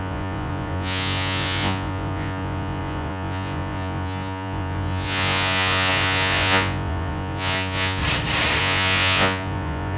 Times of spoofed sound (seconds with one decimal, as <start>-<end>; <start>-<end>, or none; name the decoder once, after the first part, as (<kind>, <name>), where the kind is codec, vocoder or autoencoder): 0.0-8.0 (vocoder, Vocos); 8.6-10.0